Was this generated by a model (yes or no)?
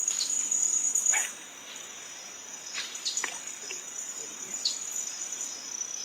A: yes